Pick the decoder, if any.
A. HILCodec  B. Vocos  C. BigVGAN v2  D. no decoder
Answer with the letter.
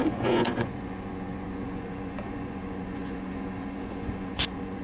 B